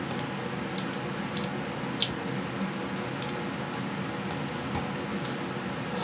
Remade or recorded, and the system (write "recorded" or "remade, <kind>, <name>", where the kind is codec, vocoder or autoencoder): recorded